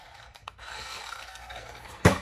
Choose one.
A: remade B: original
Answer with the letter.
A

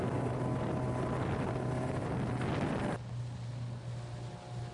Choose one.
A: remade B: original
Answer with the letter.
B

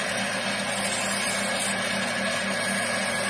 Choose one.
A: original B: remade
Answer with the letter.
A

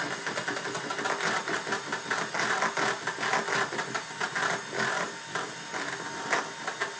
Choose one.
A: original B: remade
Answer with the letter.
A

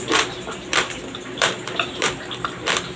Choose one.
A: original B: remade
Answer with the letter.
B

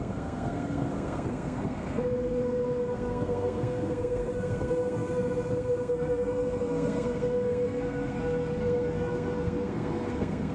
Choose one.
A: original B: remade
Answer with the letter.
B